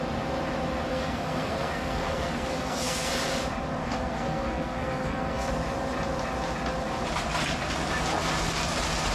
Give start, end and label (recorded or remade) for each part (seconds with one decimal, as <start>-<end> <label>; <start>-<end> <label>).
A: 0.0-0.9 recorded; 0.9-3.1 remade; 3.1-3.8 recorded; 3.8-5.5 remade; 5.5-9.1 recorded